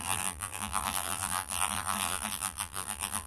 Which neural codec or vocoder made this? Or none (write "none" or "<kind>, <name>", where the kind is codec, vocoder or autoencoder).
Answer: vocoder, BigVGAN v2